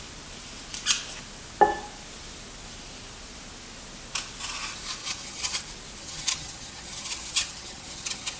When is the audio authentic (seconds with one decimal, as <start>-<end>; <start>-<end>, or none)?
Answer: 0.0-5.0; 5.6-6.0